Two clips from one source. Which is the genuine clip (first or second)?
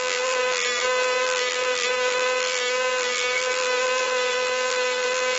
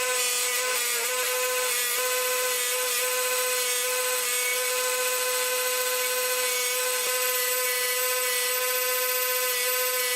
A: second